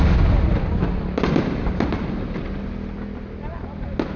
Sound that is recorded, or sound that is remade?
recorded